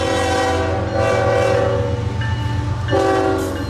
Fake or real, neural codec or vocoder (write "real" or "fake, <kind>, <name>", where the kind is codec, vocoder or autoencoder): real